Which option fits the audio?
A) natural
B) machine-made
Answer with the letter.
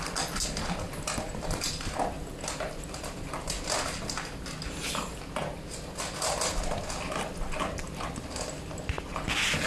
A